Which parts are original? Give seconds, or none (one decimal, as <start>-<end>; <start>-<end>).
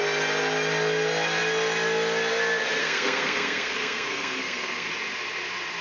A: 0.0-2.8; 4.9-5.8